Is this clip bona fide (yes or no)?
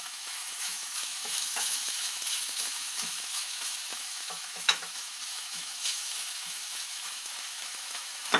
no